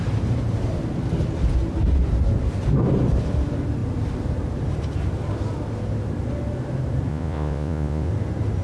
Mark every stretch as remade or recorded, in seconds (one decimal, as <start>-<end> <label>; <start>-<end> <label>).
0.0-7.1 recorded; 7.1-8.1 remade; 8.1-8.6 recorded